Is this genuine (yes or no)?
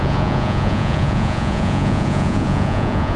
no